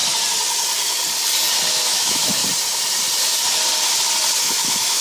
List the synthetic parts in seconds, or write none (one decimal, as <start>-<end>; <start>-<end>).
1.7-2.4; 4.4-5.0